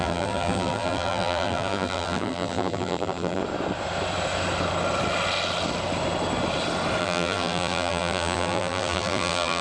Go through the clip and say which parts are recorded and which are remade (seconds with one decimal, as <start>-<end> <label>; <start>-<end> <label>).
0.0-3.4 remade; 3.4-7.0 recorded; 7.0-9.6 remade